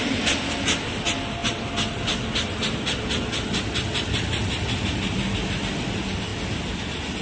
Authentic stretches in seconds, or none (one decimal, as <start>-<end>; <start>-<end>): 1.4-5.6; 6.3-7.2